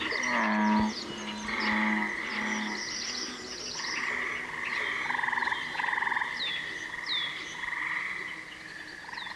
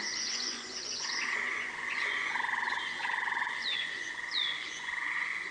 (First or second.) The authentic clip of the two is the first